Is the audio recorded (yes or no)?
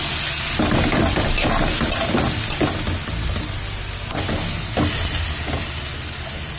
yes